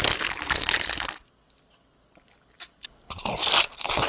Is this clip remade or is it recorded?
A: recorded